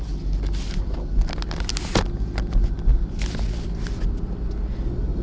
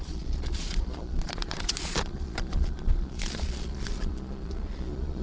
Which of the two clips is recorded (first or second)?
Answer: first